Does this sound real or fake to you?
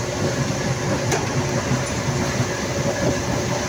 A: real